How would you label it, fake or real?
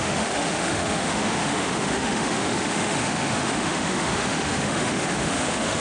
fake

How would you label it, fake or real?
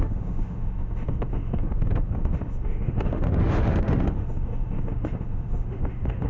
fake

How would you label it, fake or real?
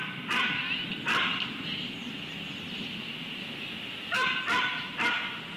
real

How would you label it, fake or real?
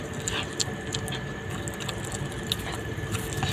real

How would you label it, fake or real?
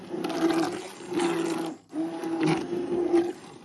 real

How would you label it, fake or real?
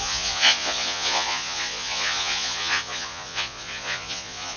fake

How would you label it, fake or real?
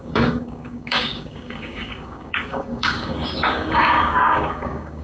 fake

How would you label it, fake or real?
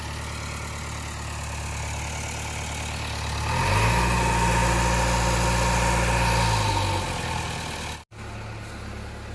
real